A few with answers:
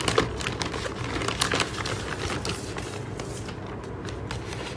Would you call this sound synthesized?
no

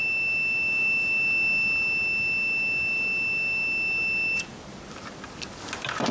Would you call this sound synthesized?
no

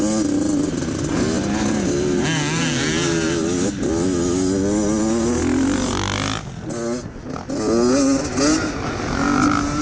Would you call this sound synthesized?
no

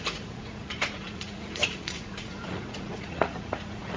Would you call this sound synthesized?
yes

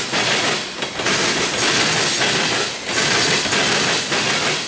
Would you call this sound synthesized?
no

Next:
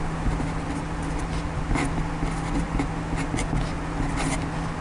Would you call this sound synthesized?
no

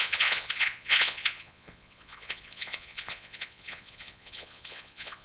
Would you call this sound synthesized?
yes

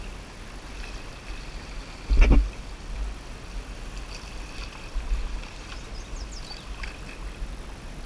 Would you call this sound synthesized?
no